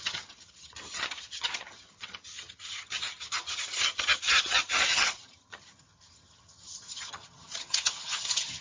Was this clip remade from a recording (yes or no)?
yes